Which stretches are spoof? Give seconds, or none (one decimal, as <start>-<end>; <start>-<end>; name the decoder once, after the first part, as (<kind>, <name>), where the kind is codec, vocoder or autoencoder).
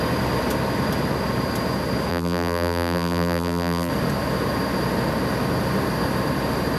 2.1-3.9 (vocoder, BigVGAN v2)